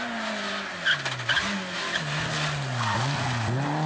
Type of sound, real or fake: real